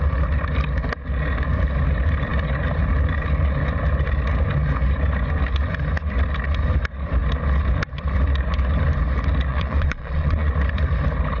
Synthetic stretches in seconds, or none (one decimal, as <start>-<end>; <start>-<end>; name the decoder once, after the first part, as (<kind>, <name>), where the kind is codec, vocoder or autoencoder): 9.5-10.5 (vocoder, Vocos)